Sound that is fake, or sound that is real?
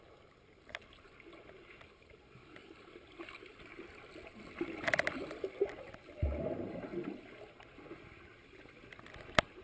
real